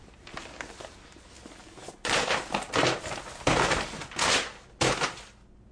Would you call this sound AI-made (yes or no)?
no